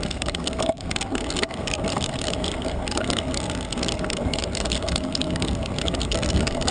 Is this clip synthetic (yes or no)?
yes